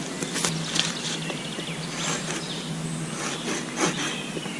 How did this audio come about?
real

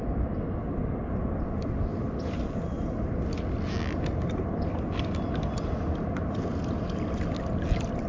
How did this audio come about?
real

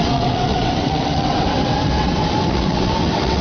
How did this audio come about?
fake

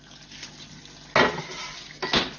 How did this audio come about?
real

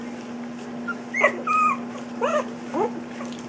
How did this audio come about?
real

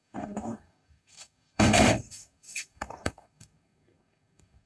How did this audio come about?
fake